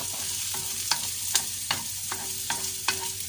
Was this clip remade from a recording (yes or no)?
no